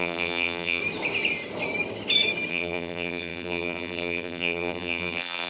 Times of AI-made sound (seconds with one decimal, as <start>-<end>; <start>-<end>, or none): 0.0-0.8; 2.5-5.5